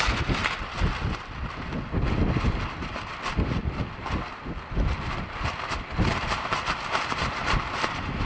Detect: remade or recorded recorded